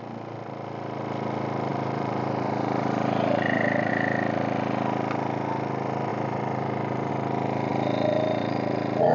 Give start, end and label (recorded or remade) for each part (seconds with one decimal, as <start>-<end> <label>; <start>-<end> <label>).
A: 0.0-1.7 recorded; 1.7-3.9 remade; 3.9-6.1 recorded; 6.1-7.1 remade; 7.1-9.1 recorded